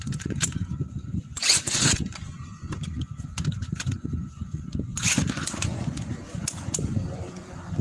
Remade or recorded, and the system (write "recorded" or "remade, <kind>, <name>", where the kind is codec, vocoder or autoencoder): remade, vocoder, Vocos